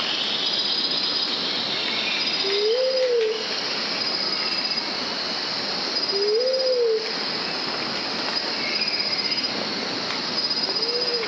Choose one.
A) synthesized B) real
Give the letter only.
B